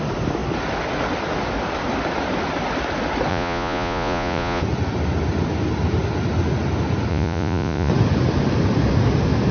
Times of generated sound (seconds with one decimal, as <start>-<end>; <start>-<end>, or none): 3.3-4.6; 7.1-7.9